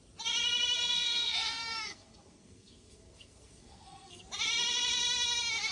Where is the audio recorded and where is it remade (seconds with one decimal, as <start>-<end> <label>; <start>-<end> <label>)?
0.0-0.8 recorded; 0.8-4.2 remade; 4.2-5.7 recorded